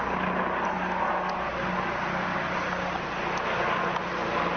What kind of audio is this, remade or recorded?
recorded